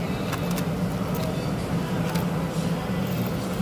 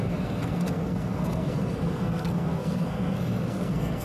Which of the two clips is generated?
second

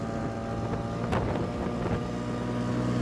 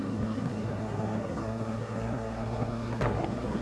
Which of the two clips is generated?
second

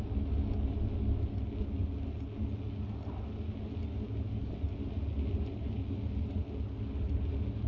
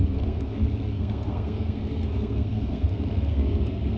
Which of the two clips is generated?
second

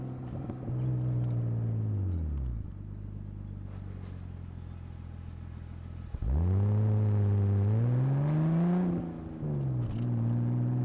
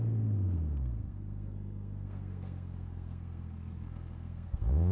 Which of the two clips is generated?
second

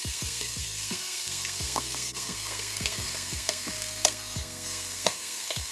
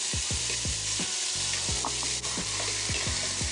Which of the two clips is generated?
first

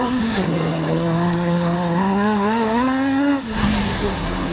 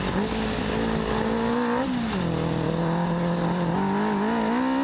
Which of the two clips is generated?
first